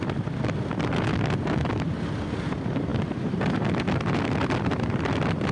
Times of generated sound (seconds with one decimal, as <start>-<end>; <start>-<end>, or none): none